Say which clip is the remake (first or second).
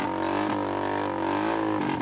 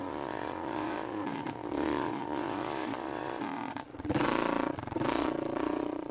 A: second